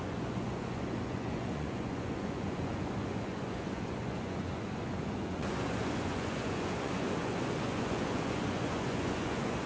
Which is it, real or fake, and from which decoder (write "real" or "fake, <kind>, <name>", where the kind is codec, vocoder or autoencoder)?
fake, vocoder, Vocos